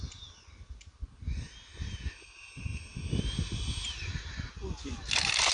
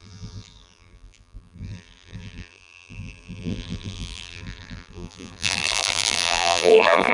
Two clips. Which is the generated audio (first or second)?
second